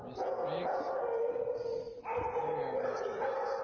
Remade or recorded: recorded